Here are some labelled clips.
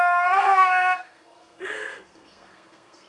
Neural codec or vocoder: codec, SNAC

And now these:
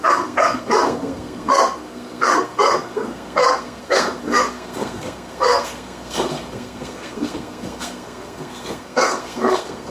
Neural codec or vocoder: codec, SNAC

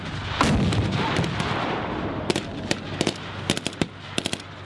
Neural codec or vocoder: none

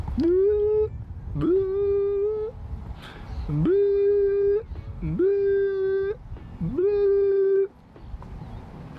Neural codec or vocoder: none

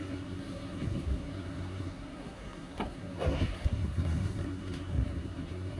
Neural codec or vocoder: codec, SNAC